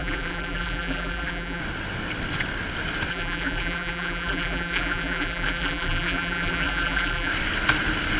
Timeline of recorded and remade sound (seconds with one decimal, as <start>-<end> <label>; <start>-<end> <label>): 0.0-1.6 remade; 1.6-3.1 recorded; 3.1-7.3 remade; 7.3-8.2 recorded